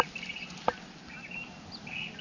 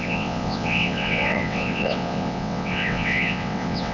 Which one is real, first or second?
first